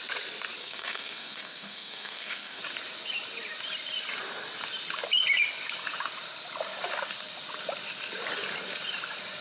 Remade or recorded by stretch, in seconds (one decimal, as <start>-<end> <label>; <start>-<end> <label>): 0.0-0.6 recorded; 0.6-2.6 remade; 2.6-9.4 recorded